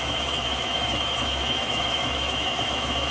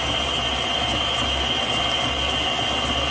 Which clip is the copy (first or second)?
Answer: first